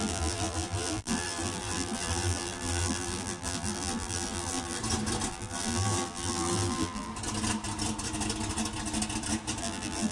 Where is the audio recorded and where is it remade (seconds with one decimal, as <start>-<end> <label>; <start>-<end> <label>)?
0.0-4.8 remade; 4.8-5.3 recorded; 5.3-7.1 remade; 7.1-9.6 recorded; 9.6-10.1 remade